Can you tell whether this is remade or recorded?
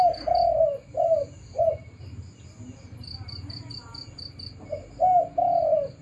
recorded